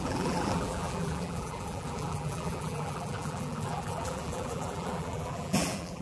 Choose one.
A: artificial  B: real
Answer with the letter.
A